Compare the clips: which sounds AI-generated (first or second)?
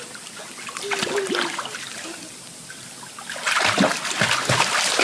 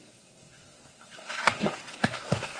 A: second